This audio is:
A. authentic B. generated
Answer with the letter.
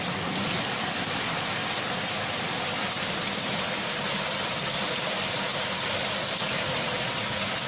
B